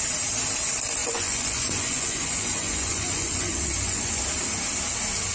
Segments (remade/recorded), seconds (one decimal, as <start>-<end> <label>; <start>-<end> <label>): 0.0-1.0 recorded; 1.0-4.2 remade; 4.2-5.3 recorded